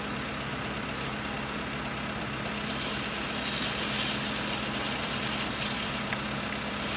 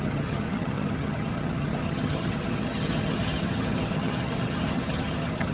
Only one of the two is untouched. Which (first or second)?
first